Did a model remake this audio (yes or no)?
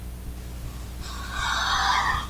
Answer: no